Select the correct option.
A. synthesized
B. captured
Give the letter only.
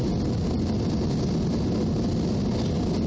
B